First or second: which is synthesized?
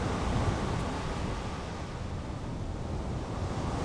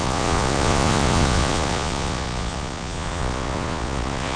second